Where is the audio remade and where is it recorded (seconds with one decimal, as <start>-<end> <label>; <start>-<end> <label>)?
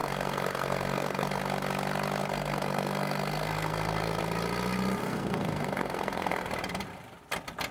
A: 0.0-1.4 remade; 1.4-2.2 recorded; 2.2-4.2 remade; 4.2-5.0 recorded; 5.0-6.5 remade; 6.5-7.7 recorded